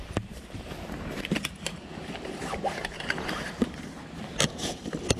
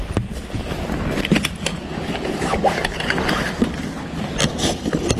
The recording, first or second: second